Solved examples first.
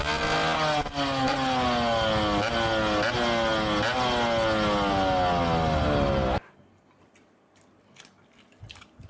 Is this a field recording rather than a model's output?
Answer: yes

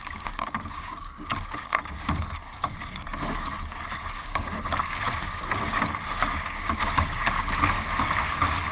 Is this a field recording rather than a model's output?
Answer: no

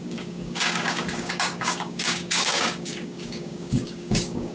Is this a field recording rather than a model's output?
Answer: no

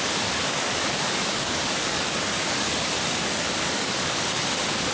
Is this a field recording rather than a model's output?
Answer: no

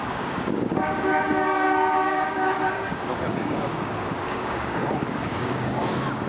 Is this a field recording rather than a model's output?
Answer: no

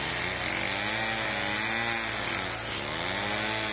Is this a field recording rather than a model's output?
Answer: yes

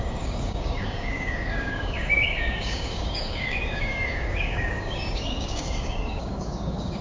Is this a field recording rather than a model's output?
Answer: no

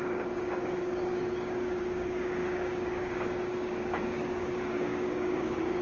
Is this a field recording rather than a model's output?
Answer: no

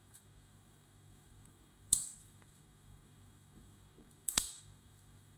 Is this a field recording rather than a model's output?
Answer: no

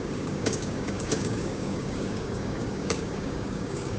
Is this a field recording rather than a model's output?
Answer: no